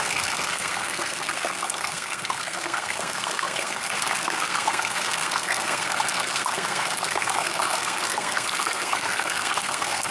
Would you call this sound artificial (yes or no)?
yes